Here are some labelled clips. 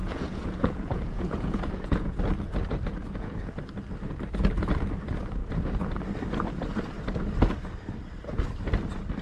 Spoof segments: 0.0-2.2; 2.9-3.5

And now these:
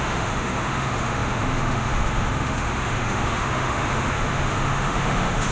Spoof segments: 0.0-5.5

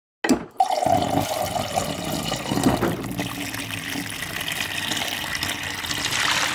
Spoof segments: none

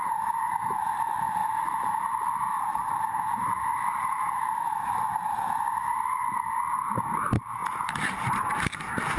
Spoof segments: none

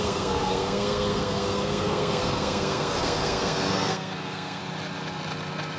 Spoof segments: 0.0-4.6